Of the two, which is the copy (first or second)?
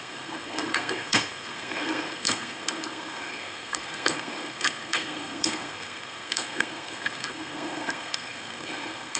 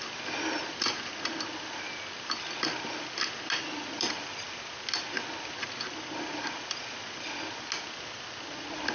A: first